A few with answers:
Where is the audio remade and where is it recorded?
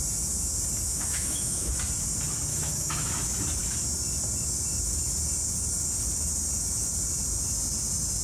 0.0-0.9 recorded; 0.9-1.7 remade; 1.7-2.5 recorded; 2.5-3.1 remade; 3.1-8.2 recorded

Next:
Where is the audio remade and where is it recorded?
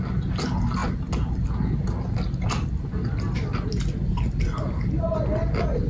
0.0-5.9 recorded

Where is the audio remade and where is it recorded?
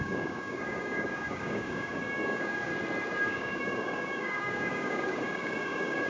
0.0-2.7 remade; 2.7-3.2 recorded; 3.2-6.1 remade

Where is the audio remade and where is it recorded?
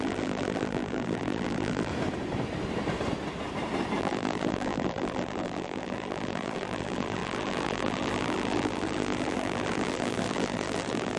0.0-1.9 remade; 1.9-4.0 recorded; 4.0-11.2 remade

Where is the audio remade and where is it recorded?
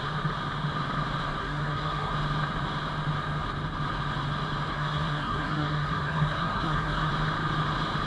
0.0-1.4 recorded; 1.4-2.1 remade; 2.1-4.7 recorded; 4.7-7.1 remade; 7.1-8.1 recorded